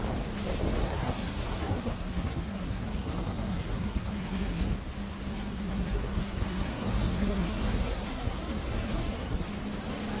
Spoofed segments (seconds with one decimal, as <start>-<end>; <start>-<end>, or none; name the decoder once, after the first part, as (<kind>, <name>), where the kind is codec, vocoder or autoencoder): 0.8-4.7 (codec, SNAC); 5.3-9.5